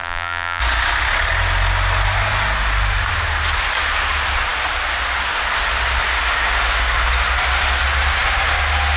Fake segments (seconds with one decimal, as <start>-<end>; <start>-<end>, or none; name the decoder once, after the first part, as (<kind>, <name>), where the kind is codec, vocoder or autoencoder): 0.0-0.6 (vocoder, BigVGAN v2)